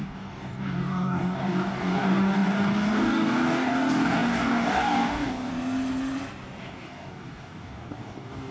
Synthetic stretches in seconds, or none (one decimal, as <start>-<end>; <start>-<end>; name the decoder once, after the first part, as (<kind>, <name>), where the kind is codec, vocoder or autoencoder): 0.0-5.5 (codec, DAC); 6.6-8.5